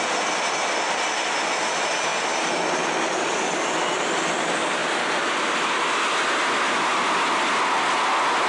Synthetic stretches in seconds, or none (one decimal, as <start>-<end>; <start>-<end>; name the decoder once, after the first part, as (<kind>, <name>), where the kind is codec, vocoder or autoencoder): none